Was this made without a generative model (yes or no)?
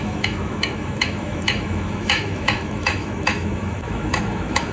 no